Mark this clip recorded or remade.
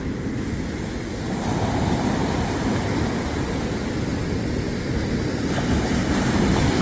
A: recorded